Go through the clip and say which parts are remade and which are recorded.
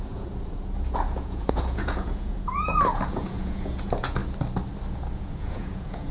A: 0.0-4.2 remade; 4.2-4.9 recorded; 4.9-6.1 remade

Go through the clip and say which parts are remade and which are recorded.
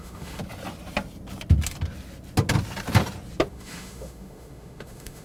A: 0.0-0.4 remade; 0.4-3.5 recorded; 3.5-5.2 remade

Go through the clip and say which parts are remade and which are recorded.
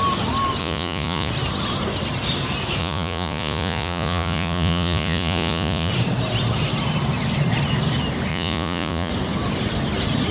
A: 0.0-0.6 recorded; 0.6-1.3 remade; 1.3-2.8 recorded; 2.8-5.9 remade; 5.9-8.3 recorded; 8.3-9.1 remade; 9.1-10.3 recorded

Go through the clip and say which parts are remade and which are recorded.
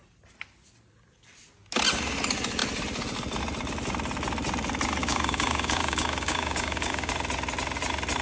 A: 0.0-5.0 recorded; 5.0-7.1 remade; 7.1-8.2 recorded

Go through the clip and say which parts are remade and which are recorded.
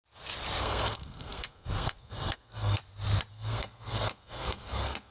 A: 0.0-0.6 recorded; 0.6-2.8 remade; 2.8-3.3 recorded; 3.3-5.1 remade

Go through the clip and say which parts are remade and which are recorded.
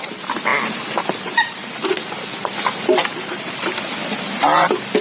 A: 0.0-5.0 recorded